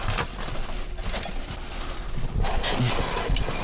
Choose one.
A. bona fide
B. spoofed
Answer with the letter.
A